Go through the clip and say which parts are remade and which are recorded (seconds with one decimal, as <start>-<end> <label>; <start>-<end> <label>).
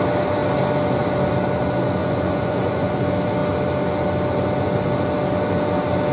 0.0-2.0 recorded; 2.0-3.0 remade; 3.0-6.1 recorded